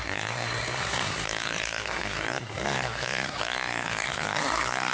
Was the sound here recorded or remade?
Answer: remade